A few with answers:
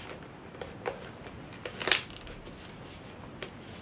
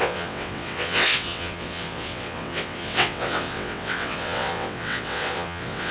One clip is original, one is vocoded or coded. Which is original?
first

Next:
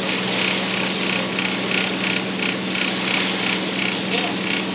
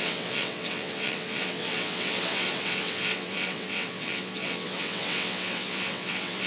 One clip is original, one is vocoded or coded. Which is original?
first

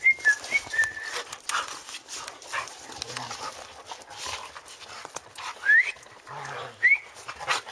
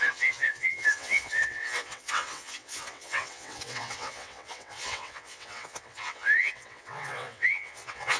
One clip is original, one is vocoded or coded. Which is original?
first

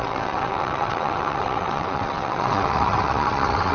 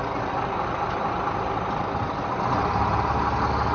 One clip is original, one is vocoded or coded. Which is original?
second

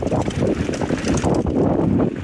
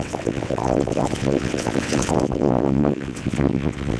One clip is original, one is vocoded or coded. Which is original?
first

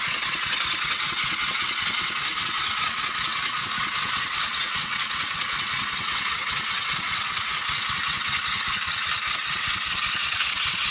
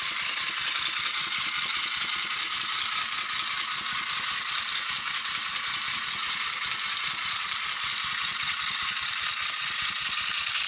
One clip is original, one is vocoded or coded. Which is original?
second